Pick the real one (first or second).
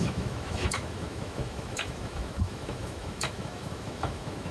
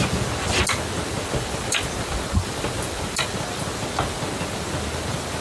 second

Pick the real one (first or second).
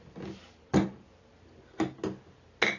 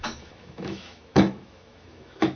first